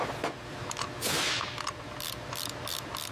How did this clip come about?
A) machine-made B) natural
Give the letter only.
B